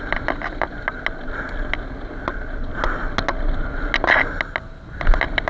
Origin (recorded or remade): recorded